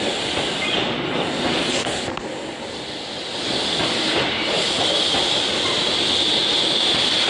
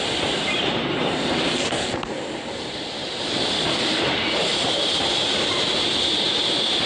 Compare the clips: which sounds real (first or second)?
first